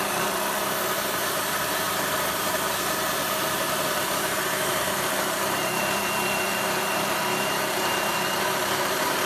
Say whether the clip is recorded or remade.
remade